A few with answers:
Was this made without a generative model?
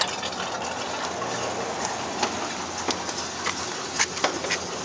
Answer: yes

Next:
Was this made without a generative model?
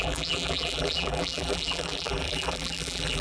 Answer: no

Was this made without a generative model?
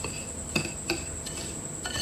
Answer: yes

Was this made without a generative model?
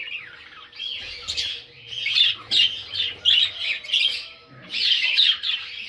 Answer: yes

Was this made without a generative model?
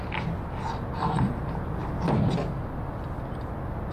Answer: yes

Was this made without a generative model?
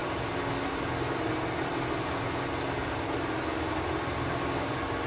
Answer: yes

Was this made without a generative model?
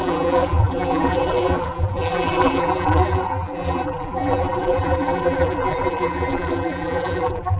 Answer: no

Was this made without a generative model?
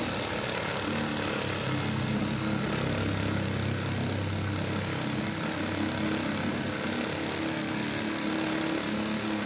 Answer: yes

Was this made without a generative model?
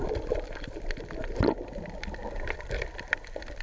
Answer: no